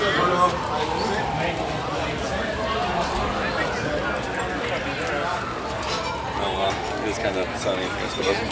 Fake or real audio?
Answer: real